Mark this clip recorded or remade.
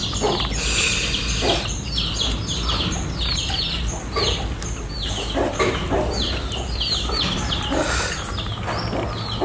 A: recorded